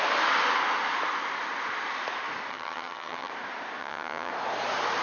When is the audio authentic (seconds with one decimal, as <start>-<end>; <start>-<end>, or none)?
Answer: 0.0-2.5; 3.3-3.8; 4.3-5.0